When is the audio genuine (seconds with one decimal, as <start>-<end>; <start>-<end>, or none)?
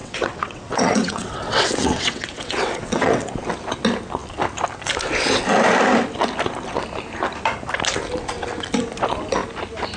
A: 3.3-10.0